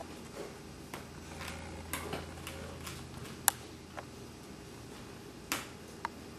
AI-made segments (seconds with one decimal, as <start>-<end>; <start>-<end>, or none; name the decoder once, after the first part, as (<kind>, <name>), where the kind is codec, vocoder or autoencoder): none